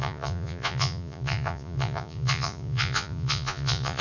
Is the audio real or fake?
fake